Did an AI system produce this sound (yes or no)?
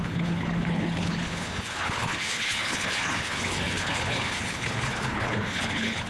yes